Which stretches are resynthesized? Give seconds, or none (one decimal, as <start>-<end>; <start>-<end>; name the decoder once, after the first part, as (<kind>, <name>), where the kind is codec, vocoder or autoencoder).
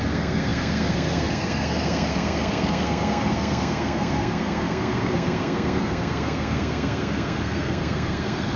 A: 0.0-8.6 (codec, SNAC)